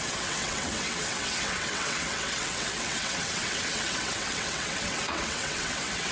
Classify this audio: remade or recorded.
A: remade